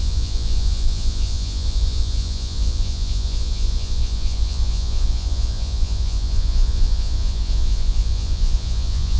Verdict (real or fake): fake